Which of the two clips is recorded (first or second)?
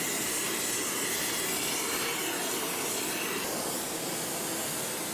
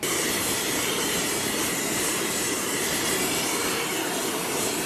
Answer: first